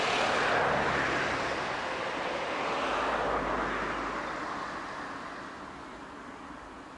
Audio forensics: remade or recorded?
recorded